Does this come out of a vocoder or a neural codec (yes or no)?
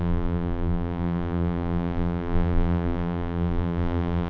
yes